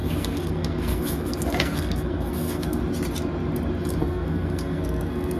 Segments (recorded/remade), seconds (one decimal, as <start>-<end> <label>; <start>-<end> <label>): 0.0-2.8 remade; 2.8-4.0 recorded; 4.0-5.4 remade